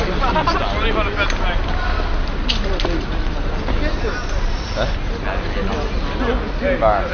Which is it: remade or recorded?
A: recorded